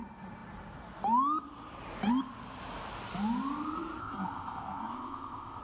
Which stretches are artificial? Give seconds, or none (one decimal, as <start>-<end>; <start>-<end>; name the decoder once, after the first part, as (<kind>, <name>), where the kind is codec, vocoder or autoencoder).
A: 4.0-5.6 (codec, ZipCodec)